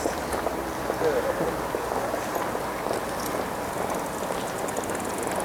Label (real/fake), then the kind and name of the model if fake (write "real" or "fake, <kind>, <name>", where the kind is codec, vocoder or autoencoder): real